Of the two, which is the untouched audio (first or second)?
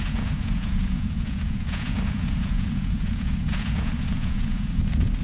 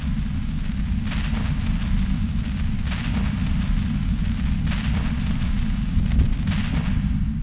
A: second